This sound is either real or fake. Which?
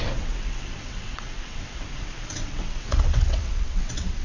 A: fake